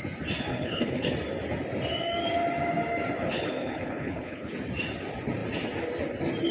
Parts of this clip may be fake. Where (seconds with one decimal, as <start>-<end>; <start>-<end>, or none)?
0.5-1.1; 3.3-4.5